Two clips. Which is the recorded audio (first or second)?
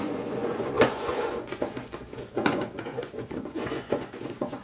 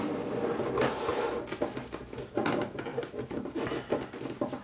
second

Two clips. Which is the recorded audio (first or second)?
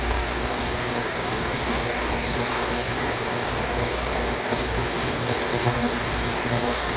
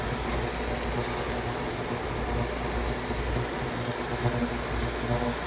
second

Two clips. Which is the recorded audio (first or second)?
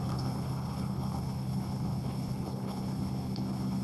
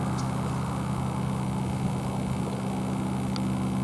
second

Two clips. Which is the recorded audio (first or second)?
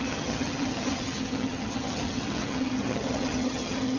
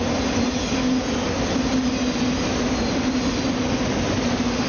second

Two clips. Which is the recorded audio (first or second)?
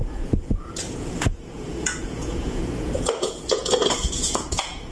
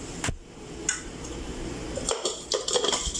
second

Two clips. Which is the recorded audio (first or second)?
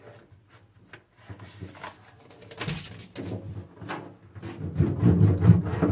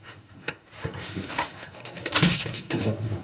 first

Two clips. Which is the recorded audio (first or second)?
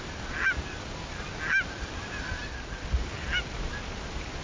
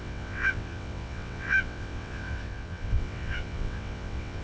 first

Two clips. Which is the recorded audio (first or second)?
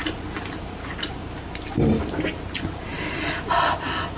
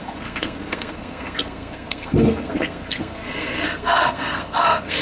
first